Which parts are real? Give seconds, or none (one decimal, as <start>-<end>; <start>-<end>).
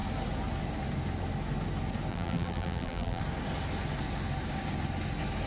0.0-2.1; 3.2-5.5